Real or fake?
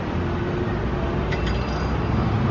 real